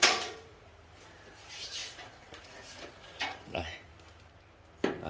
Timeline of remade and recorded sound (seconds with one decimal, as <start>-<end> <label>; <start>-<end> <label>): 0.0-0.7 remade; 0.7-1.4 recorded; 1.4-3.9 remade; 3.9-5.1 recorded